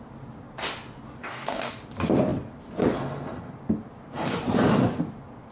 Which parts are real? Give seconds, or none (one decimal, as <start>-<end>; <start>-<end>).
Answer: 0.0-1.2; 1.7-5.5